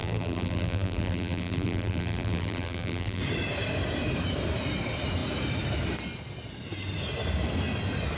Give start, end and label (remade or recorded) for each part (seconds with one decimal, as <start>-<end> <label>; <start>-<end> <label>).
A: 0.0-3.2 remade; 3.2-8.2 recorded